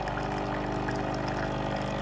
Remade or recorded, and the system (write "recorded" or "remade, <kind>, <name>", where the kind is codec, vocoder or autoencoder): recorded